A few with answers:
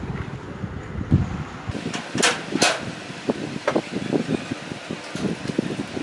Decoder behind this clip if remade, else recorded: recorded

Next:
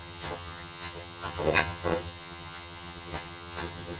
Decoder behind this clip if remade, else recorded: remade, vocoder, HiFi-GAN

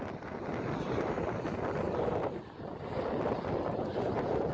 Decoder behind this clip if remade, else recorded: recorded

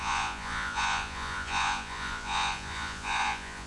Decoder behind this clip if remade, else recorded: remade, vocoder, Vocos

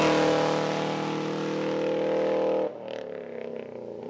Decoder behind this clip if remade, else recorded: recorded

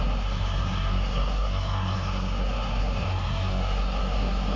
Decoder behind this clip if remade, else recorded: remade, codec, SNAC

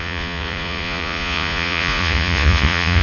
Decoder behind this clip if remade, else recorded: remade, vocoder, Vocos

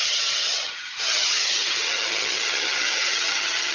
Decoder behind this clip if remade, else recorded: remade, vocoder, HiFi-GAN